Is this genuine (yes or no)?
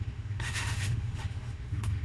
no